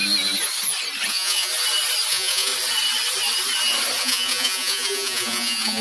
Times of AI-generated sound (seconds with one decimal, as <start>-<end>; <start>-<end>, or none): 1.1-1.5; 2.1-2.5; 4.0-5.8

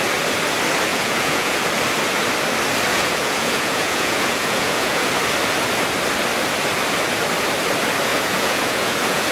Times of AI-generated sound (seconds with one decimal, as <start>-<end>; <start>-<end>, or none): 0.9-1.7; 2.9-5.1; 8.1-9.3

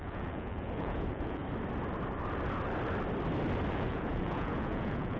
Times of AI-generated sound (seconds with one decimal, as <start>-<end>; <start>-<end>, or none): 0.0-1.4; 3.7-5.2

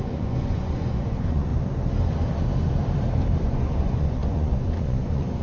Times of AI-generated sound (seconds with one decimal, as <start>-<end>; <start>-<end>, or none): 0.0-1.5; 3.4-5.4

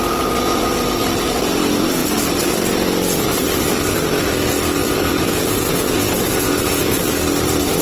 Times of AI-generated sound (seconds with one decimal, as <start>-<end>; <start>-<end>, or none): 5.1-7.0

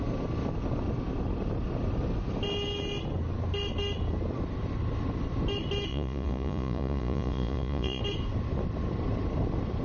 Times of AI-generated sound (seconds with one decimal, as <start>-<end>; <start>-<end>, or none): 5.9-8.0